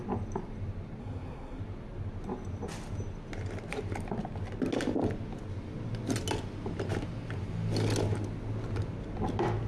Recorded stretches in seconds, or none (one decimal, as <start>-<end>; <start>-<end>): 0.0-1.0; 1.6-9.7